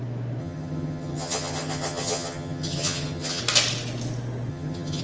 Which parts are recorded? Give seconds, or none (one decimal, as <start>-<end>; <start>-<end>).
0.0-0.4; 3.4-4.5